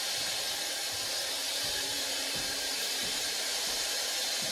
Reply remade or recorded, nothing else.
remade